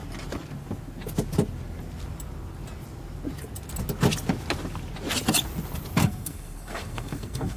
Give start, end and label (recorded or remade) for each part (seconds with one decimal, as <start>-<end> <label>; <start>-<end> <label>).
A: 0.0-6.0 recorded; 6.0-7.6 remade